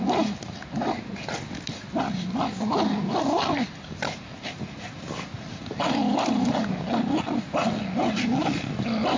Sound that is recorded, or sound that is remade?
recorded